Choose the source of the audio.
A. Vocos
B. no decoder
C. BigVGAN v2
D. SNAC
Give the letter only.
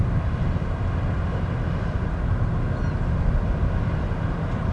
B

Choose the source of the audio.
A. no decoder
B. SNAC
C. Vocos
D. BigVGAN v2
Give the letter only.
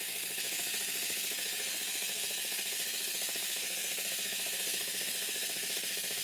B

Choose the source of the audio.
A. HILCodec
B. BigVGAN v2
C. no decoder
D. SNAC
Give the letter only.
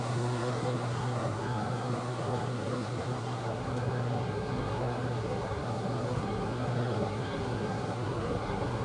D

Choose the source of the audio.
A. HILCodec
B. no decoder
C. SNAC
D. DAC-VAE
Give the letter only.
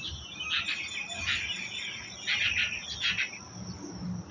B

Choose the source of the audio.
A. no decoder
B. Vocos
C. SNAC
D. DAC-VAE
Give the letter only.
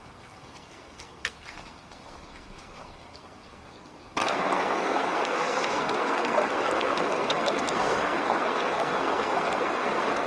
C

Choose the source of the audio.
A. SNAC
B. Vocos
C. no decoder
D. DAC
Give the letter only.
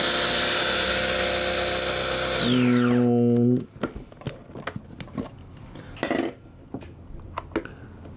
C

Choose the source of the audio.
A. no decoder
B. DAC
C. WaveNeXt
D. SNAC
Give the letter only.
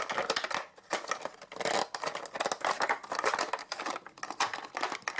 A